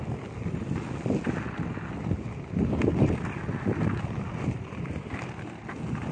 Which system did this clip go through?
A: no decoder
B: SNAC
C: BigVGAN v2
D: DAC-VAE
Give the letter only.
A